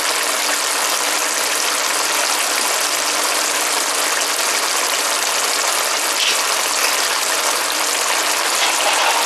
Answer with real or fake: real